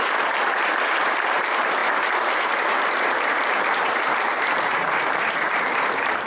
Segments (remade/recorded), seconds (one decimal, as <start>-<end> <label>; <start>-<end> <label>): 0.0-6.3 remade